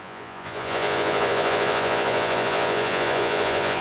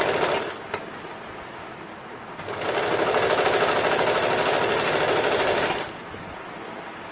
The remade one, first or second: first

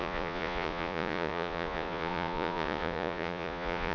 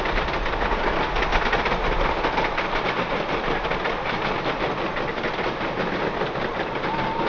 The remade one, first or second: first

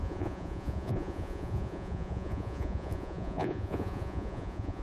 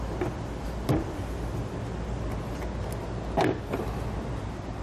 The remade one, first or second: first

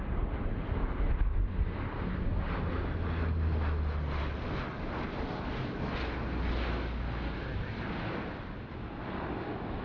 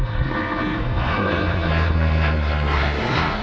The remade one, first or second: second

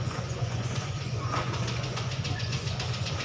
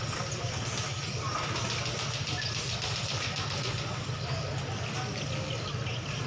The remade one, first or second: first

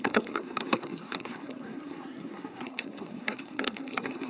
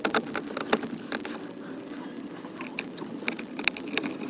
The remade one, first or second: first